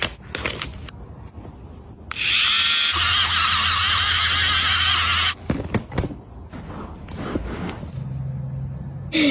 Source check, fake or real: real